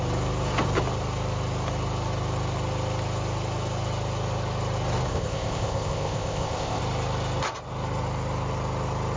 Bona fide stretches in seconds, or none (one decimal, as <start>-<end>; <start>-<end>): 0.0-5.1; 6.8-9.2